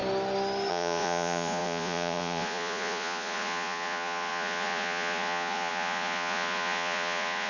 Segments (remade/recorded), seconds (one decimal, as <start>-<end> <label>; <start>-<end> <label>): 0.0-0.7 recorded; 0.7-7.5 remade